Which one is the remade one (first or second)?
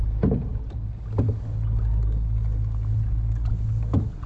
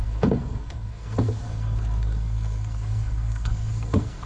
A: second